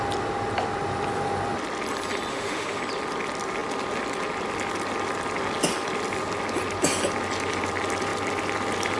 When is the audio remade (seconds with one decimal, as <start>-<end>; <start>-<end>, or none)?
2.3-2.8